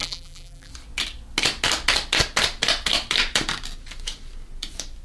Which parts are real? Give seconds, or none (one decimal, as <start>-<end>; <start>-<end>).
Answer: 0.7-5.0